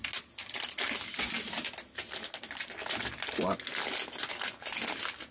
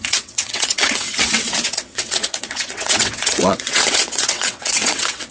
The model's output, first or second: second